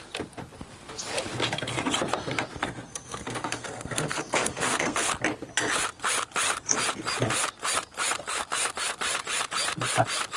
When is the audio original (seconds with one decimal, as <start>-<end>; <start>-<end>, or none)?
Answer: 0.0-2.9; 5.1-10.4